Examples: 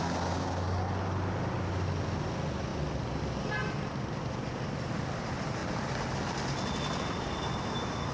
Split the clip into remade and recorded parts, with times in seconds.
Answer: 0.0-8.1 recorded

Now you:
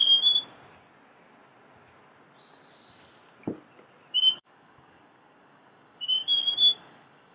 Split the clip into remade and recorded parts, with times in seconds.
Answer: 0.0-4.3 recorded; 4.3-7.3 remade

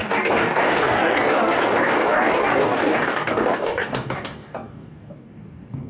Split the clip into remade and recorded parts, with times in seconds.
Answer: 0.0-5.9 remade

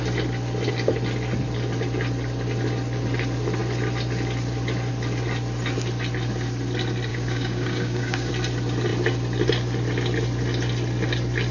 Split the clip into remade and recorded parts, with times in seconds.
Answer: 0.0-7.1 recorded; 7.1-8.3 remade; 8.3-11.5 recorded